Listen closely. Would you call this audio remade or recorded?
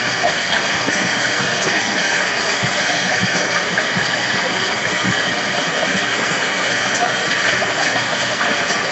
remade